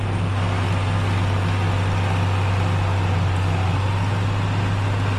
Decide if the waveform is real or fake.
real